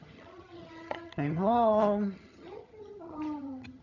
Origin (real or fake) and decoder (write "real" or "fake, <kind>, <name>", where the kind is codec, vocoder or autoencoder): fake, vocoder, HiFi-GAN